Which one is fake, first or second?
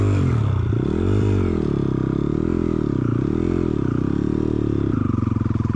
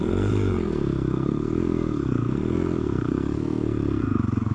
second